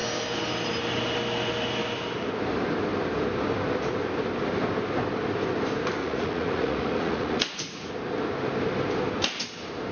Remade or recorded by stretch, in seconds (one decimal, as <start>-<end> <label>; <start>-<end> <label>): 0.0-6.0 recorded; 6.0-7.9 remade; 7.9-9.9 recorded